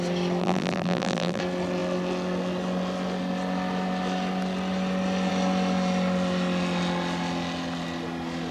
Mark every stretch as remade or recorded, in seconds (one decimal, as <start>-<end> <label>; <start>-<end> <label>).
0.0-0.4 recorded; 0.4-1.4 remade; 1.4-8.5 recorded